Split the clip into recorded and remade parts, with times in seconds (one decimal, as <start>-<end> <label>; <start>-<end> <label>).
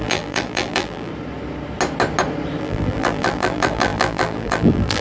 0.0-1.1 remade; 1.1-2.6 recorded; 2.6-5.0 remade